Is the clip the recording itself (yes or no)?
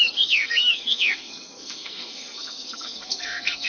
no